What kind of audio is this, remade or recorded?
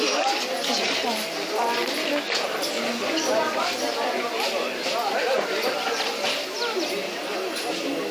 recorded